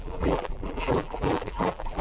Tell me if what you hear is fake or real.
fake